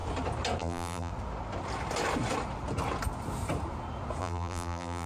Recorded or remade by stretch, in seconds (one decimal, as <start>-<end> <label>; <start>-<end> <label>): 0.0-0.6 recorded; 0.6-1.1 remade; 1.1-4.2 recorded; 4.2-5.1 remade